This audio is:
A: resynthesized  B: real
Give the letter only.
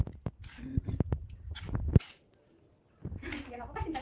B